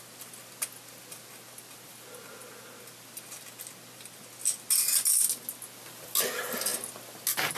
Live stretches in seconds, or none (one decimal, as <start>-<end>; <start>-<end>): 0.0-7.6